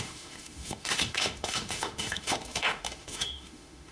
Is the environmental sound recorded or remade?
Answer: remade